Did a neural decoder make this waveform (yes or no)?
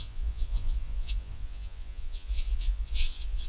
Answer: yes